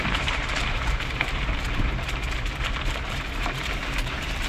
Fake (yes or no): yes